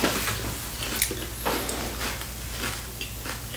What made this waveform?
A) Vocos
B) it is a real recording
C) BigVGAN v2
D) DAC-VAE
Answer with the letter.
B